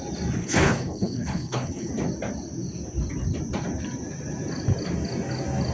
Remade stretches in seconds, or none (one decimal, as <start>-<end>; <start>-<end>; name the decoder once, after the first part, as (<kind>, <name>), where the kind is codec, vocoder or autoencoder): 0.4-1.9 (codec, HILCodec)